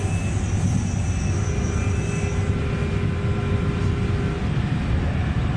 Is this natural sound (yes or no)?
yes